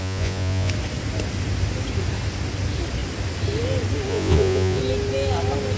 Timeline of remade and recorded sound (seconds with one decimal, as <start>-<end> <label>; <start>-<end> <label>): 0.0-0.7 remade; 0.7-4.1 recorded; 4.1-4.8 remade; 4.8-5.8 recorded